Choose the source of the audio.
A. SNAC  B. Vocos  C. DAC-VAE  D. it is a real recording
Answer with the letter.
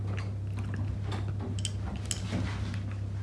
D